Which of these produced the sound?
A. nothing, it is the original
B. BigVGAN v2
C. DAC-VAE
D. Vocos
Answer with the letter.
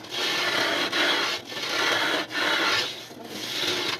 A